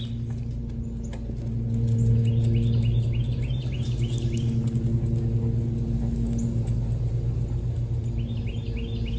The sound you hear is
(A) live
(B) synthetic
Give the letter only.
A